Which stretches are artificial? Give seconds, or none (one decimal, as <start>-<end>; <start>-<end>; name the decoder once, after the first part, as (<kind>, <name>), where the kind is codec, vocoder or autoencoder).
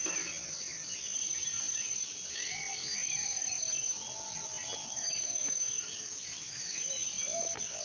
4.8-6.8 (autoencoder, DAC-VAE)